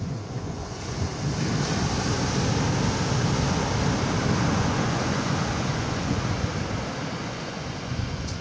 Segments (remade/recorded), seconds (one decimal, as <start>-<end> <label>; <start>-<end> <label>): 0.0-1.1 remade; 1.1-4.5 recorded; 4.5-6.5 remade; 6.5-7.2 recorded; 7.2-8.4 remade